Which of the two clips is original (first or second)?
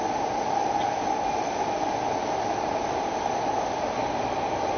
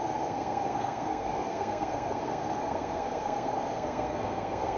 first